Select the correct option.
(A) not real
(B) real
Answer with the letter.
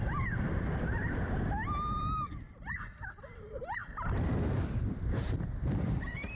A